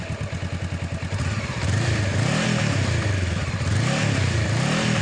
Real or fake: real